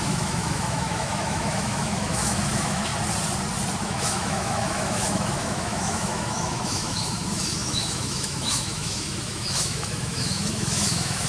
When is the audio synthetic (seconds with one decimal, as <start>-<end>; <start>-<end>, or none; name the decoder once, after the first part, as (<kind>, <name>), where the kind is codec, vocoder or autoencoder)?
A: 0.0-2.9 (autoencoder, DAC-VAE); 3.8-11.3